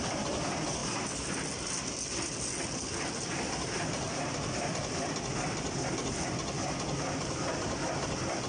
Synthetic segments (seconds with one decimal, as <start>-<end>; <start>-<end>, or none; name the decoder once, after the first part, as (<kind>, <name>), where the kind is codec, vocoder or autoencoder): none